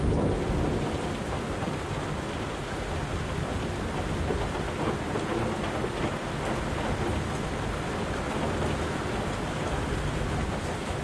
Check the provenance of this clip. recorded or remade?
recorded